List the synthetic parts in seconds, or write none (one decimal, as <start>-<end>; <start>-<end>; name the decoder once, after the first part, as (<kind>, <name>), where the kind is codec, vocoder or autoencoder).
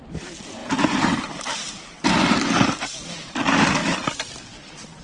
0.0-3.8 (vocoder, BigVGAN v2)